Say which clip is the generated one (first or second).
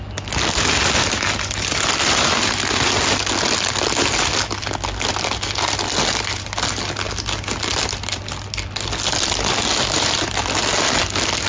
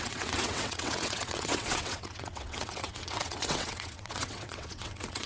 second